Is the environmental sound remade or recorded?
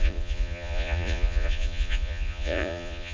remade